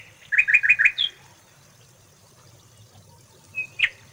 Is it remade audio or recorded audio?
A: recorded